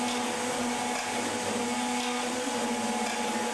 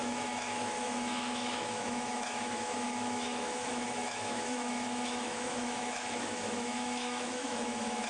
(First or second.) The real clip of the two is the first